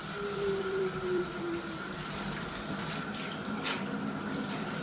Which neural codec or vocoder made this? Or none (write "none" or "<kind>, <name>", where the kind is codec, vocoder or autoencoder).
vocoder, BigVGAN v2